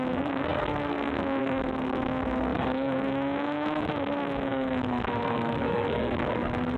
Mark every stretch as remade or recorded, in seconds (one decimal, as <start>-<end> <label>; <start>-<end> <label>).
0.0-6.8 remade